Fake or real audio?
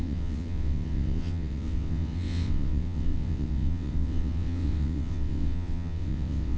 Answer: fake